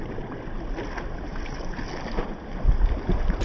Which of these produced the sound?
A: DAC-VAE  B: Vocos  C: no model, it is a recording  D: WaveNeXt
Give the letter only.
C